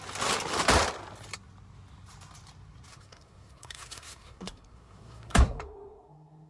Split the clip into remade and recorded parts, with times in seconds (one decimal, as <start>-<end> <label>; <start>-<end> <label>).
0.0-2.9 recorded; 2.9-6.5 remade